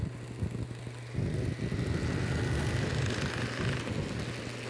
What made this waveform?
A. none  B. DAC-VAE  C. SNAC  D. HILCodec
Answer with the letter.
A